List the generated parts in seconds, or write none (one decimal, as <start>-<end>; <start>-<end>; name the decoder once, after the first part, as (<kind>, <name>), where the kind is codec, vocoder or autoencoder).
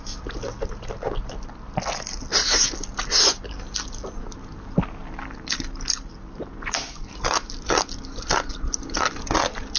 none